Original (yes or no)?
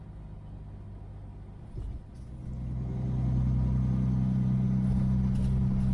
yes